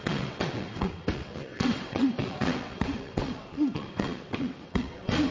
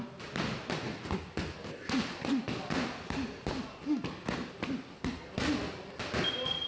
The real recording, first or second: second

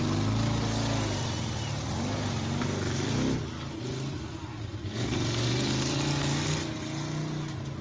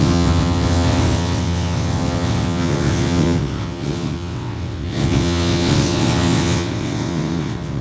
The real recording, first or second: first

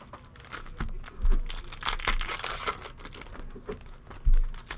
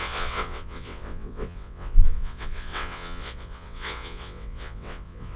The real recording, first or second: first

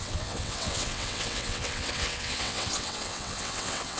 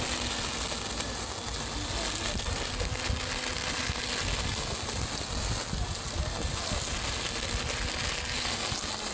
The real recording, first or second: second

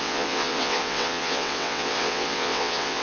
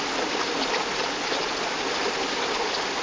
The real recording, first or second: second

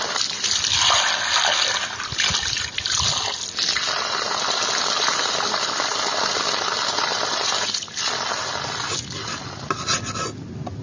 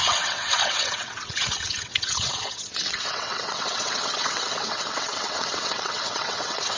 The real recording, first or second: first